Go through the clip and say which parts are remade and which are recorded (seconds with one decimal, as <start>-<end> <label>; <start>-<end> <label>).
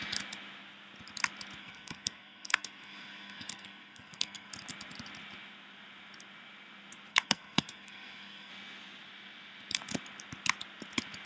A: 0.0-1.6 recorded; 1.6-4.5 remade; 4.5-7.1 recorded; 7.1-8.5 remade; 8.5-11.3 recorded